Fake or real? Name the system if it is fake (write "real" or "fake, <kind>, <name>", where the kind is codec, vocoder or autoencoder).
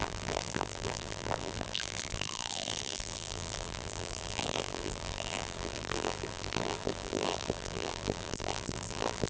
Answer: fake, vocoder, BigVGAN v2